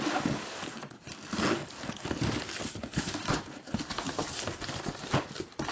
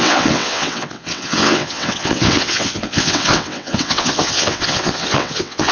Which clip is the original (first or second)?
first